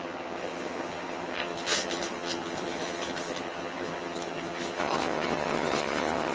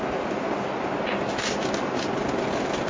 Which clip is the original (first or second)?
second